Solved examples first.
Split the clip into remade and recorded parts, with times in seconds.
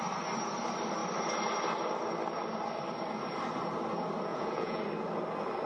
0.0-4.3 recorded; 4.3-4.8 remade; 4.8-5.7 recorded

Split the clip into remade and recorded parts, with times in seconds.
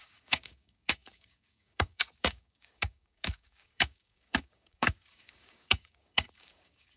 0.0-7.0 remade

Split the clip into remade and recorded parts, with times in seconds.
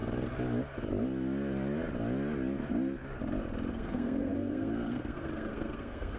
0.0-3.7 recorded; 3.7-6.2 remade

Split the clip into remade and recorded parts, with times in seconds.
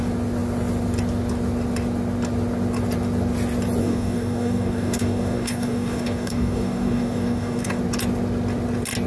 0.0-3.8 recorded; 3.8-7.8 remade; 7.8-9.1 recorded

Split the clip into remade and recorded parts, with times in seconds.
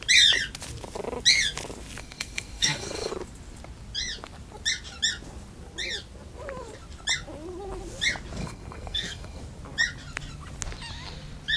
0.0-2.0 recorded; 2.0-3.1 remade; 3.1-8.4 recorded; 8.4-9.4 remade; 9.4-11.6 recorded